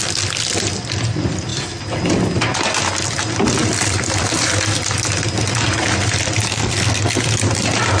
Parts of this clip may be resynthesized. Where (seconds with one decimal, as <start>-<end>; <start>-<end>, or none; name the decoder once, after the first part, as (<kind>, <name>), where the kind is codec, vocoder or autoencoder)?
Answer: 6.5-7.2 (codec, SNAC)